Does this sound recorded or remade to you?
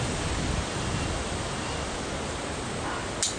recorded